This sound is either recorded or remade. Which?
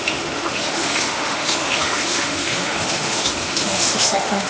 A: remade